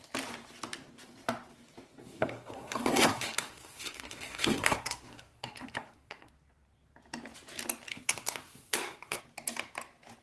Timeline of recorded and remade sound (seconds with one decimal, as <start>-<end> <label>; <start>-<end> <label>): 0.0-2.0 recorded; 2.0-6.3 remade; 6.3-7.9 recorded; 7.9-9.2 remade; 9.2-10.2 recorded

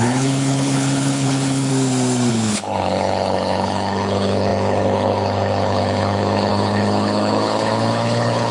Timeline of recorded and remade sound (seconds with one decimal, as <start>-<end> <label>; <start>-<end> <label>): 0.0-1.7 remade; 1.7-2.3 recorded; 2.3-8.5 remade